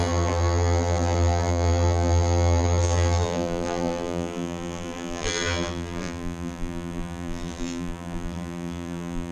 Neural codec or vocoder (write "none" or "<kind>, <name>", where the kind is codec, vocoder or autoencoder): vocoder, BigVGAN v2